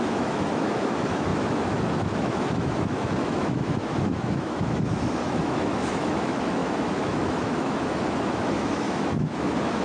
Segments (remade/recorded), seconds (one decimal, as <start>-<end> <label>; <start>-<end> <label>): 0.0-9.8 remade